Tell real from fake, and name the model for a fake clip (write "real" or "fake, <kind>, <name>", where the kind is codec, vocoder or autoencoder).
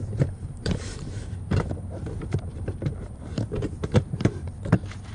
fake, vocoder, BigVGAN v2